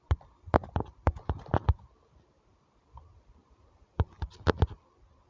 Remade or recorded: recorded